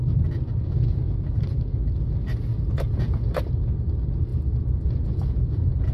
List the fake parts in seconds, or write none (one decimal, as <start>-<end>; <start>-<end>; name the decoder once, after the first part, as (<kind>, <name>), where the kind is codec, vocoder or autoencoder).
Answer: 2.5-3.5 (vocoder, Vocos); 4.3-5.9